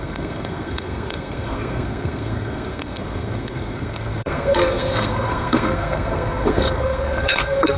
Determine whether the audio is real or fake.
fake